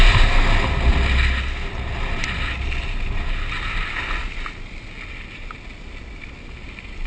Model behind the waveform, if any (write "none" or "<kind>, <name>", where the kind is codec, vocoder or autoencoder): none